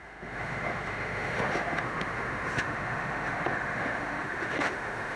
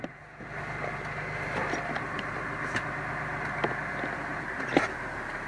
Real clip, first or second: second